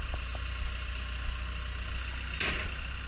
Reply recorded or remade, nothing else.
recorded